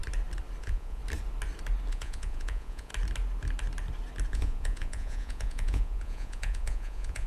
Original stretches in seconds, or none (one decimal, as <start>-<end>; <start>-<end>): 0.0-0.6; 1.0-1.9; 2.9-4.3